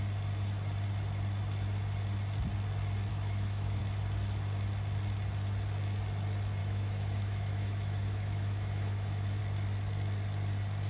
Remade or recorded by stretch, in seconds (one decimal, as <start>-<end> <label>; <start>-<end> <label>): 0.0-3.1 recorded; 3.1-3.8 remade; 3.8-6.6 recorded; 6.6-9.4 remade; 9.4-10.9 recorded